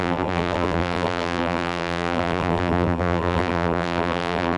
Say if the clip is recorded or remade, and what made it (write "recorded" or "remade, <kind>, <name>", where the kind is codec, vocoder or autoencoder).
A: remade, vocoder, BigVGAN v2